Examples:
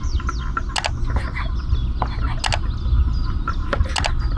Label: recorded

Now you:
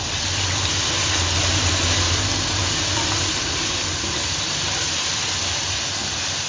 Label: recorded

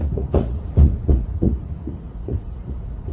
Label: remade